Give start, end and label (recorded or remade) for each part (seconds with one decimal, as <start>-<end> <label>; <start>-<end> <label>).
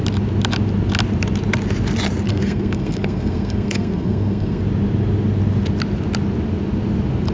0.0-2.3 recorded; 2.3-4.6 remade; 4.6-7.3 recorded